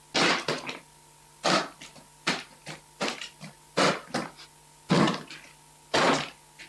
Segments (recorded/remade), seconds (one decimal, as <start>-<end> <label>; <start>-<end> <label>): 0.0-6.7 recorded